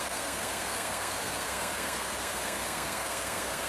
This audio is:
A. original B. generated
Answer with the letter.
B